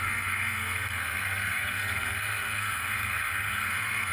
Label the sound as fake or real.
fake